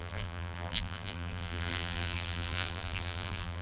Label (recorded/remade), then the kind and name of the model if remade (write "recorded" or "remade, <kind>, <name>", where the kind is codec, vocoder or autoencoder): remade, vocoder, BigVGAN v2